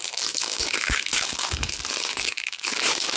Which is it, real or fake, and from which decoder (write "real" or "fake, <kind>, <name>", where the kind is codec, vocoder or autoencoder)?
fake, codec, DAC